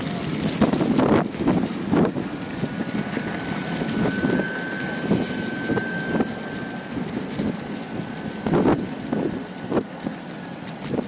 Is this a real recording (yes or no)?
yes